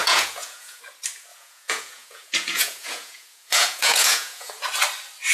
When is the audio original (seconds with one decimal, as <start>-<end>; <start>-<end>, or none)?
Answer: 0.8-1.3; 4.5-5.3